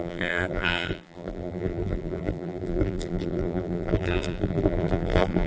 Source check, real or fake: fake